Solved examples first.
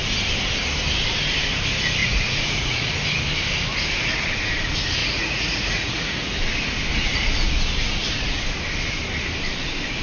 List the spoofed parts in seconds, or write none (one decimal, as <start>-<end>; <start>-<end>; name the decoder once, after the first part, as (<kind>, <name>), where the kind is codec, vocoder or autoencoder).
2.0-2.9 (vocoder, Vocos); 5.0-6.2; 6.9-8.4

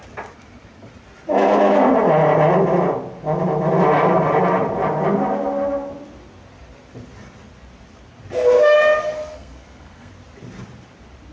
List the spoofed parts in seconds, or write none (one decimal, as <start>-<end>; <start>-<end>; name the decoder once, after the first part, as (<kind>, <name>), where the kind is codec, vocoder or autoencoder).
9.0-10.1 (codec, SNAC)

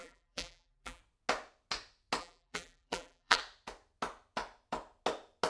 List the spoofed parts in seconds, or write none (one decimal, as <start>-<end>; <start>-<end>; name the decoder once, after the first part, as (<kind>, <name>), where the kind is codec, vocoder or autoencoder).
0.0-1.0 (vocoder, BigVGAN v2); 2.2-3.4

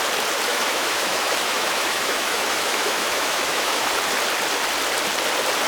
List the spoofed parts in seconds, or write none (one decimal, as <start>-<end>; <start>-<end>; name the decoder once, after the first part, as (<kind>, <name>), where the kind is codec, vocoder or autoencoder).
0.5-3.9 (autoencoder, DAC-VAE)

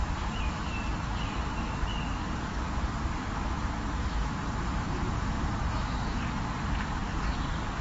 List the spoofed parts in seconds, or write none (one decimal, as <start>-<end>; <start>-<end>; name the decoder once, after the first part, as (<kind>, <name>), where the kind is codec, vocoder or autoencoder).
0.0-0.8 (autoencoder, DAC-VAE); 4.0-6.2